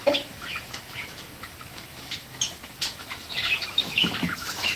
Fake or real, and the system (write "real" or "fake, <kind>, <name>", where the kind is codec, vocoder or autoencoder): fake, autoencoder, DAC-VAE